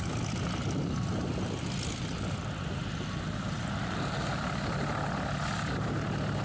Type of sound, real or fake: real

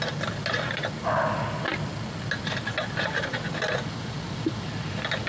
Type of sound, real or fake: real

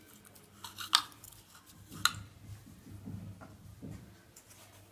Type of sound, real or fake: real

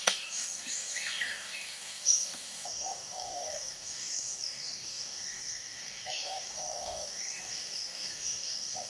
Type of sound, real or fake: fake